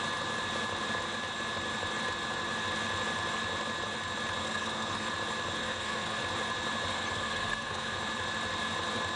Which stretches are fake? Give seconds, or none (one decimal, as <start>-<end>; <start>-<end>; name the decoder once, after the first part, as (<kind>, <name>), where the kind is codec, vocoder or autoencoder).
4.4-5.1 (codec, SNAC); 5.6-6.2; 6.9-8.0